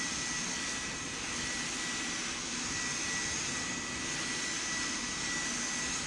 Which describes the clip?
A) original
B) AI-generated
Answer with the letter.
A